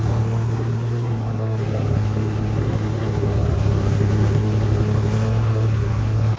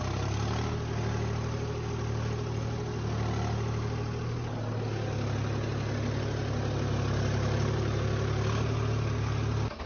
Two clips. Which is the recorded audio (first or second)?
second